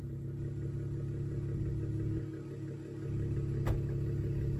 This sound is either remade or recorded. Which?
recorded